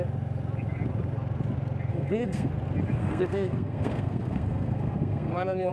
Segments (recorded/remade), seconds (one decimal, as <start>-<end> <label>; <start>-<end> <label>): 0.0-1.9 recorded; 1.9-2.5 remade; 2.5-3.0 recorded; 3.0-5.7 remade